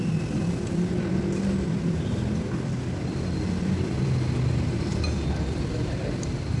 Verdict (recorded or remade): remade